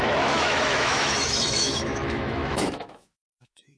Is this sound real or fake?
fake